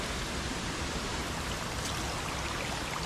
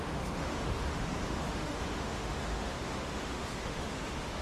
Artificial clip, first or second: second